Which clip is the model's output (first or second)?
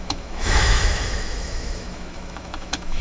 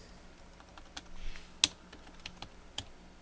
first